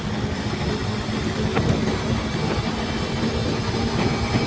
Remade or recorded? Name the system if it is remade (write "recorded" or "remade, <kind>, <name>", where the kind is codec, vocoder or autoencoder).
recorded